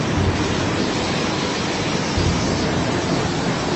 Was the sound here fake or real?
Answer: real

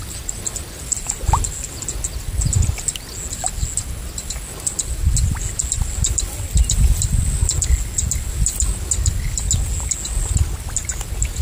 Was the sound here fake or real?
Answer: real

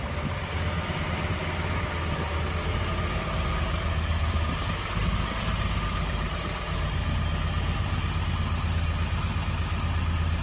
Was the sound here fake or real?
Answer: real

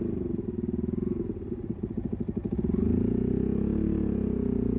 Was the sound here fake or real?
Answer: real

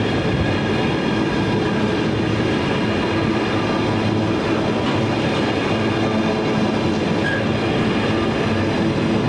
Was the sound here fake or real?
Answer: real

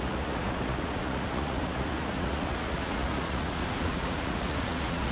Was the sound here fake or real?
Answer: fake